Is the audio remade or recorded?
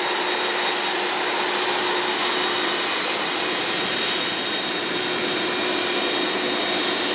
recorded